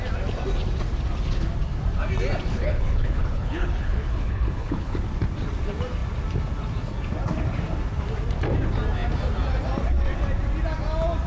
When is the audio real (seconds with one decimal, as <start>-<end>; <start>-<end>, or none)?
0.0-2.5; 5.0-11.3